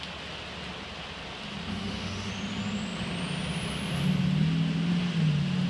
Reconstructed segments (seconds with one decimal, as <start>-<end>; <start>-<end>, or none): 1.7-2.3